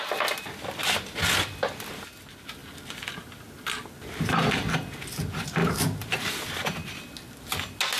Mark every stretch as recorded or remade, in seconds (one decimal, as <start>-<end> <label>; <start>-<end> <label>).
0.0-5.6 recorded; 5.6-6.9 remade; 6.9-8.0 recorded